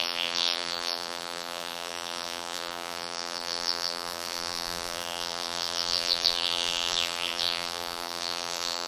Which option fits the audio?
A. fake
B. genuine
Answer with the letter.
A